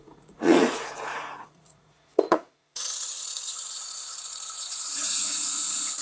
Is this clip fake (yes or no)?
yes